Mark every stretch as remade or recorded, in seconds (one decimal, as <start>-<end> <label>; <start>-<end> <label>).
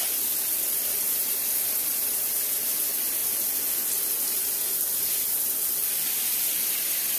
0.0-7.2 recorded